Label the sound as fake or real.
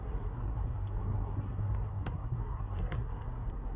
fake